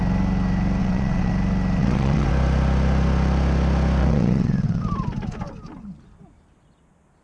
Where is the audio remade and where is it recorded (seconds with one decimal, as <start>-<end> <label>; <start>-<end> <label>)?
0.0-0.8 recorded; 0.8-1.3 remade; 1.3-1.8 recorded; 1.8-2.3 remade; 2.3-4.0 recorded; 4.0-4.8 remade; 4.8-7.2 recorded